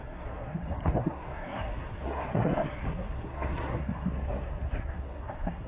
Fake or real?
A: fake